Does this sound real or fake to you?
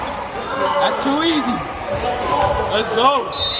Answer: real